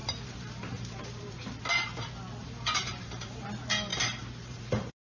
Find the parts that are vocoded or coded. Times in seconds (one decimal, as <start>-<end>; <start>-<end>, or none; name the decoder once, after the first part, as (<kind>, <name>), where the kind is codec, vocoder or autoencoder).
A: 0.0-1.6 (vocoder, BigVGAN v2); 2.4-3.5; 3.9-5.0